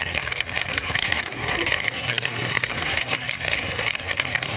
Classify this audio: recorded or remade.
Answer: remade